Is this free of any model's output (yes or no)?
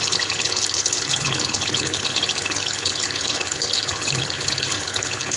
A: no